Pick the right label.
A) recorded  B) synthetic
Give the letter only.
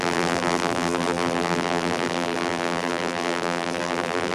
B